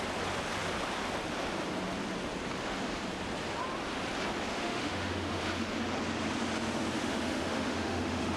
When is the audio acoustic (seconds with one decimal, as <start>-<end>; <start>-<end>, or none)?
0.0-4.5; 5.4-7.0